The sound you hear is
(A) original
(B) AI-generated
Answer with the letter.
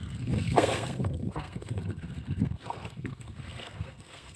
B